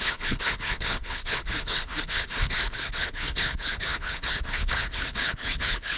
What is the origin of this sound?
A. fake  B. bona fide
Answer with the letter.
A